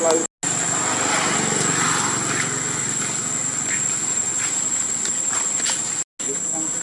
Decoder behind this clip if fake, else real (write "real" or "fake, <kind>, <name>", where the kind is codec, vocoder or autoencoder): real